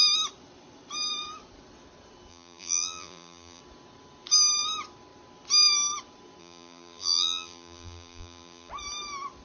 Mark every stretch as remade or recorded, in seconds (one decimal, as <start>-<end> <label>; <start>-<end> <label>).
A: 0.0-2.3 recorded; 2.3-3.6 remade; 3.6-6.4 recorded; 6.4-8.7 remade; 8.7-9.4 recorded